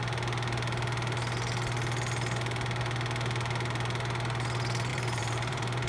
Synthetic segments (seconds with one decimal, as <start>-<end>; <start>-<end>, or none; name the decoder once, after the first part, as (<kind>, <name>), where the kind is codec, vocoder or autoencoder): 4.9-5.9 (vocoder, BigVGAN v2)